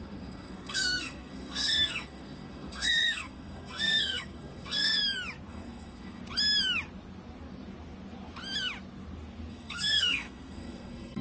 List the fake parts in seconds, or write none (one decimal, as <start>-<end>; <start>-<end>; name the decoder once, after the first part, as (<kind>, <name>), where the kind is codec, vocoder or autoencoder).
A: 0.0-5.0 (codec, SNAC); 5.5-6.2; 9.5-11.2